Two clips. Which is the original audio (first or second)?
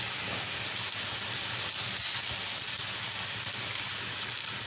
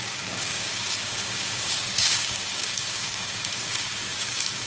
first